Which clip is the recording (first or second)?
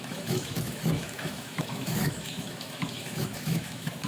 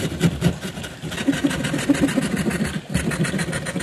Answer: second